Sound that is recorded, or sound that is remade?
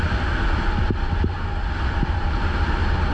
remade